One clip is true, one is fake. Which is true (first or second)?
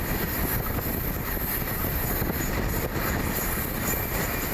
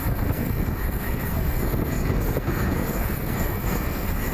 first